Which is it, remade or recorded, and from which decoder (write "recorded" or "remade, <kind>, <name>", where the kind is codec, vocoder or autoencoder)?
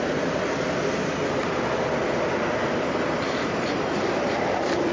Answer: recorded